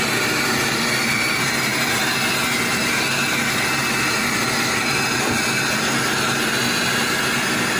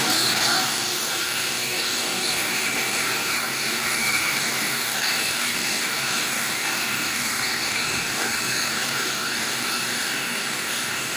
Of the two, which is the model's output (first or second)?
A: second